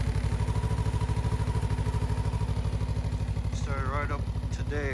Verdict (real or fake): real